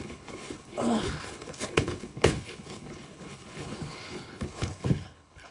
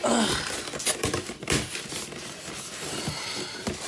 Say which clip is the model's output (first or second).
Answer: first